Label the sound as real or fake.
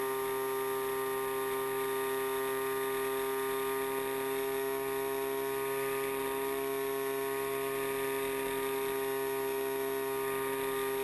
real